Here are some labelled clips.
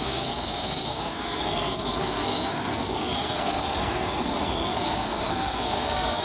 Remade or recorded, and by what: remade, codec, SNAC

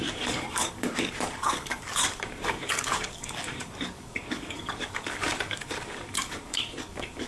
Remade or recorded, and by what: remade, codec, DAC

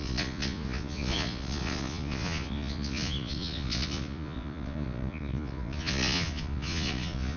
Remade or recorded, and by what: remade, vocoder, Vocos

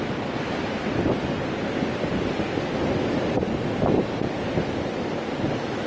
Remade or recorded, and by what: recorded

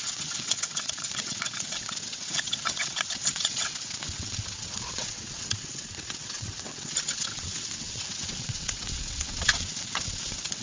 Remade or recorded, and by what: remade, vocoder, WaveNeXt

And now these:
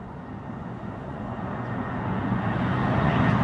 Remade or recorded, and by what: remade, vocoder, Vocos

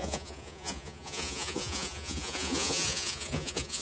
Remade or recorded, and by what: remade, vocoder, Vocos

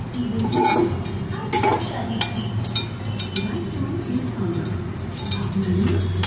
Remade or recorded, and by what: recorded